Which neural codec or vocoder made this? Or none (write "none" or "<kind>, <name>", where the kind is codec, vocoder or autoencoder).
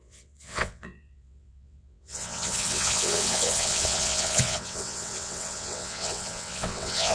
vocoder, WaveNeXt